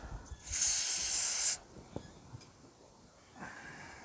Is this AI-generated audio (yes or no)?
yes